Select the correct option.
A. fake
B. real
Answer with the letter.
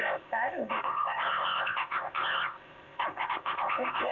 A